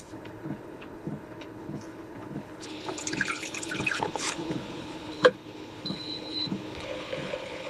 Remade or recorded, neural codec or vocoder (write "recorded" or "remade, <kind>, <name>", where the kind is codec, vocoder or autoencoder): remade, codec, HILCodec